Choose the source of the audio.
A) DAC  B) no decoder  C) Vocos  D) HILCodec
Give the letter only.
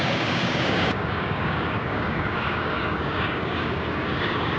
A